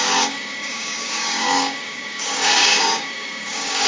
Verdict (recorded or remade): remade